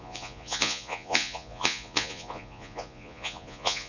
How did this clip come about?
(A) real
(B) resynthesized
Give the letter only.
B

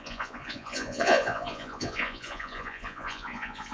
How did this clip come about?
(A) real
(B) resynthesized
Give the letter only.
B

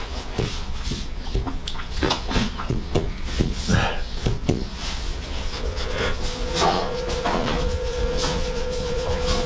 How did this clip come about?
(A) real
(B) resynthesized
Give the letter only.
B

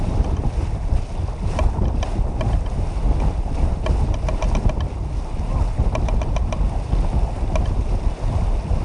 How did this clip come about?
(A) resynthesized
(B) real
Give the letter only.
B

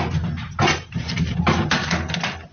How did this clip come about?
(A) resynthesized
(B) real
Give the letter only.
B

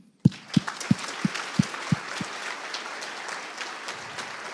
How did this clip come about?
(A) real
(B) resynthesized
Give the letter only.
A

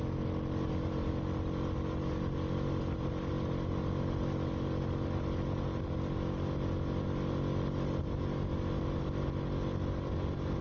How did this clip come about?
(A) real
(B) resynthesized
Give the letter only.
A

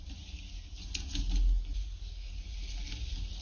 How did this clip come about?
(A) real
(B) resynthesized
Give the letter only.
A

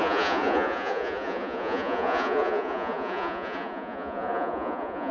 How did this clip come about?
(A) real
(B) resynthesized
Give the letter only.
B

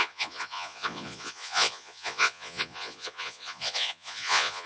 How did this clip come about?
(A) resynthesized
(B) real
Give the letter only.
A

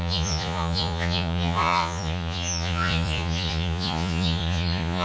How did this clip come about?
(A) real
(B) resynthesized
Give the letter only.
B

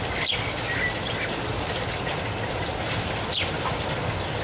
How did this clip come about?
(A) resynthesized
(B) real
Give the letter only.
B